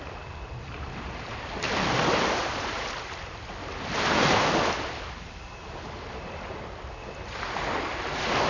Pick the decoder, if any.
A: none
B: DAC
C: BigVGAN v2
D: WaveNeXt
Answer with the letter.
A